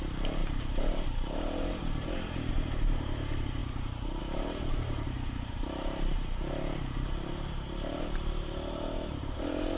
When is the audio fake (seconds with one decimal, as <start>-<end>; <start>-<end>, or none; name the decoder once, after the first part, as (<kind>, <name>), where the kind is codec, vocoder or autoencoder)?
0.0-9.8 (vocoder, BigVGAN v2)